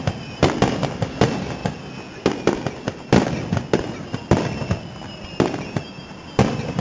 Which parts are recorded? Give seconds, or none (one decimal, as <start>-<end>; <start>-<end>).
0.0-6.8

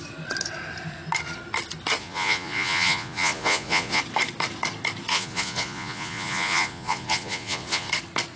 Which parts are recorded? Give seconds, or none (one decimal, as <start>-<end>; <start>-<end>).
0.0-2.0; 4.0-5.1; 7.9-8.4

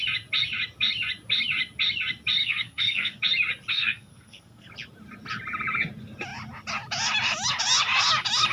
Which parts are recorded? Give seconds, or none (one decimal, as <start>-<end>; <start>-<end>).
0.0-2.4; 3.2-3.7; 4.7-8.5

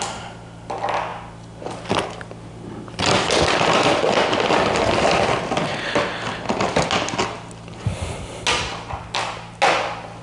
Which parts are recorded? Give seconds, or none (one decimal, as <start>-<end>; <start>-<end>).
0.0-10.2

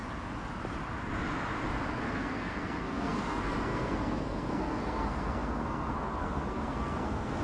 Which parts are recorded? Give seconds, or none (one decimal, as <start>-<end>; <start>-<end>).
0.0-1.9